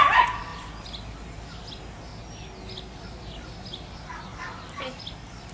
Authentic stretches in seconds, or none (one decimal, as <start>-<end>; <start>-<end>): 0.0-5.5